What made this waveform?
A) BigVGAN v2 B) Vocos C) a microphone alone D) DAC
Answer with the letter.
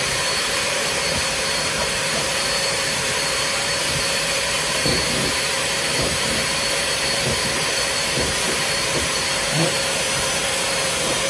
A